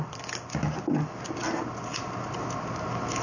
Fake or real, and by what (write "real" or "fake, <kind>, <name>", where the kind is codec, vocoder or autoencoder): real